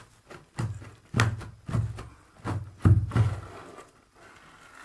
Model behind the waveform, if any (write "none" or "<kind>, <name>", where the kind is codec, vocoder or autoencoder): none